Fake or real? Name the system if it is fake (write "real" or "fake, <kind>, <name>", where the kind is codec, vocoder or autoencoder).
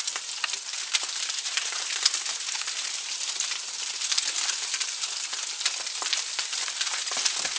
real